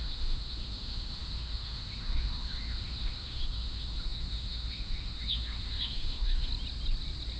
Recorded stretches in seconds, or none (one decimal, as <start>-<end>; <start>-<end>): 6.5-7.4